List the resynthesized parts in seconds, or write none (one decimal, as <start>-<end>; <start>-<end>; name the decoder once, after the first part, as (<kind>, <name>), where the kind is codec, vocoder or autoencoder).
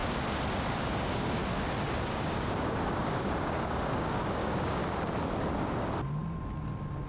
0.6-1.4 (codec, DAC); 2.1-4.8